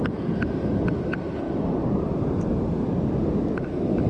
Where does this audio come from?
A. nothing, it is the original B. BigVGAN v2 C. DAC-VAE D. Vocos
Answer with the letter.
A